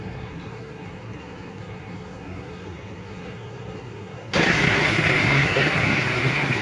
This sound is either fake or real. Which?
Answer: fake